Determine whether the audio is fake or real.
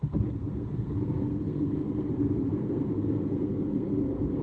fake